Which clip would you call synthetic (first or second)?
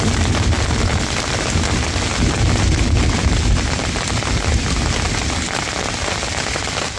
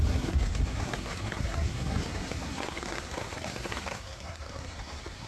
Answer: second